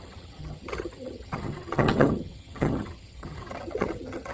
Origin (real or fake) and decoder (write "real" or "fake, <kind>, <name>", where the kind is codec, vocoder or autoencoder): fake, vocoder, HiFi-GAN